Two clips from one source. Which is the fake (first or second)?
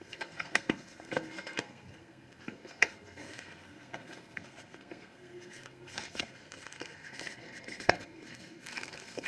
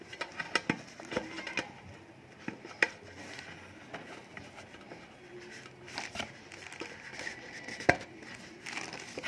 first